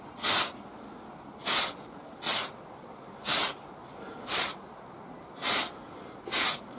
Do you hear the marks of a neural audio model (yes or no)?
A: no